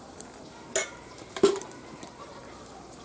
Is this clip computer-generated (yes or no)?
no